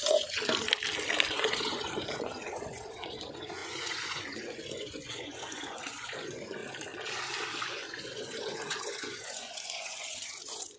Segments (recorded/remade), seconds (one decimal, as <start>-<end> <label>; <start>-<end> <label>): 0.0-0.4 remade; 0.4-1.3 recorded; 1.3-6.6 remade; 6.6-7.6 recorded; 7.6-10.8 remade